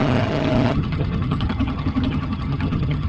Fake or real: fake